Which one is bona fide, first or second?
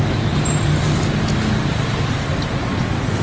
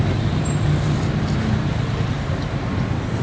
first